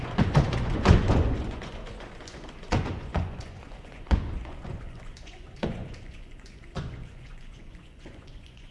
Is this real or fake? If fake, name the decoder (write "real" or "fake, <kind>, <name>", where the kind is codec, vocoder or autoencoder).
fake, vocoder, Vocos